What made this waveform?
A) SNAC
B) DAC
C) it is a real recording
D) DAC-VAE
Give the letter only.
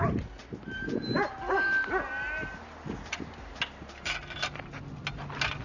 C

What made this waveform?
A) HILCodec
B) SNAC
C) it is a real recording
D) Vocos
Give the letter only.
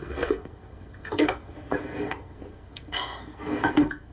B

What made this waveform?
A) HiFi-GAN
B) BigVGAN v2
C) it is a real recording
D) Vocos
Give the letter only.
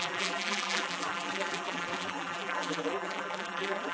B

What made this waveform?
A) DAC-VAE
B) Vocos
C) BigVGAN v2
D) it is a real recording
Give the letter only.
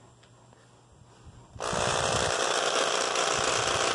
D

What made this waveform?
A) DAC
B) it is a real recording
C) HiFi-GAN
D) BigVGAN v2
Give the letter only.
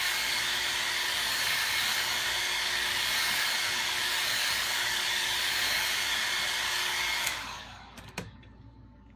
A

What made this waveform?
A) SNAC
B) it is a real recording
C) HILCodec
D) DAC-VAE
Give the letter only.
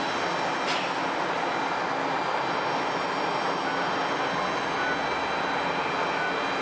B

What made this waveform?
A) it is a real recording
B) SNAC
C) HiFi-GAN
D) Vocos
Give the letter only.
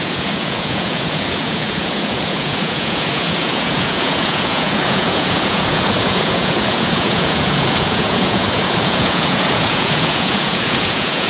D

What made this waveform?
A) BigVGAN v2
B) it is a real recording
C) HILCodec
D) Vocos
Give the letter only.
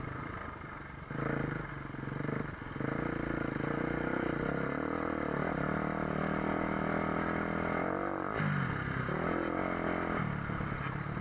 B